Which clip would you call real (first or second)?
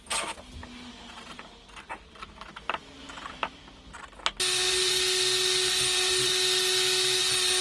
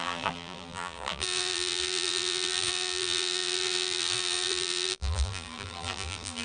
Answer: first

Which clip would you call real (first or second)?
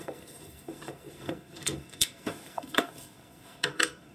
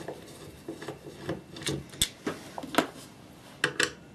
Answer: second